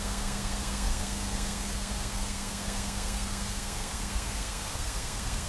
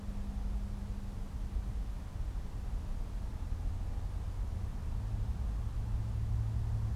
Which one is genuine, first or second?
second